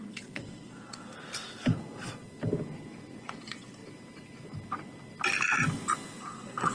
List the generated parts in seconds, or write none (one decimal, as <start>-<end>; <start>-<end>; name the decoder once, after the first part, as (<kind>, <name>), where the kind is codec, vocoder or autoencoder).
0.0-1.1 (vocoder, Vocos); 3.2-3.8; 6.2-6.7

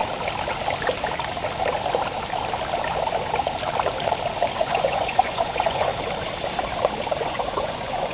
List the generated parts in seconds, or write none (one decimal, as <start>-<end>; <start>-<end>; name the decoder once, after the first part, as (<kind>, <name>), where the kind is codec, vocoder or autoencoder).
4.6-5.9 (vocoder, Vocos); 7.2-8.1